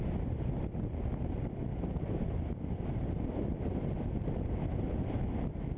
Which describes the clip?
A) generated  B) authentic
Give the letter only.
B